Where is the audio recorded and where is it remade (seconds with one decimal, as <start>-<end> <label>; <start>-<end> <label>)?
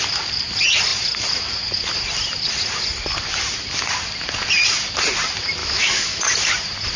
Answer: 0.0-5.6 recorded; 5.6-6.2 remade; 6.2-7.0 recorded